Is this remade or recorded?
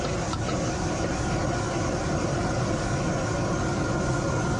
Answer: recorded